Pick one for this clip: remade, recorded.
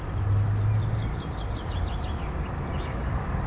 remade